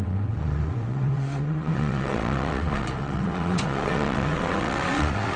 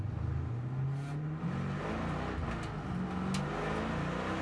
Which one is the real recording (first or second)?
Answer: second